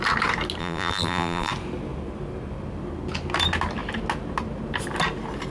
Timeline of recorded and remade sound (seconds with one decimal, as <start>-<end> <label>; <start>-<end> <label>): 0.0-0.6 recorded; 0.6-1.5 remade; 1.5-5.5 recorded